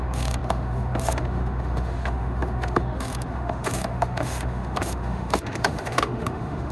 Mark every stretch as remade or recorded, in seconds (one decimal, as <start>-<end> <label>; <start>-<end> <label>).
0.0-6.7 remade